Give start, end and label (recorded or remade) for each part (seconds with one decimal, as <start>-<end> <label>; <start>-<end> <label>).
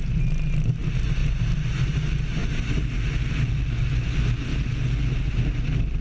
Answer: 0.0-6.0 recorded